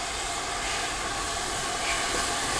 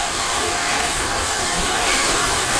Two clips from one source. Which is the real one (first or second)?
first